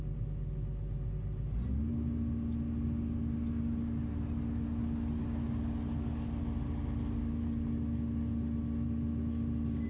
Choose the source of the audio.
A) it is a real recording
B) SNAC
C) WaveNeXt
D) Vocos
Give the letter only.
A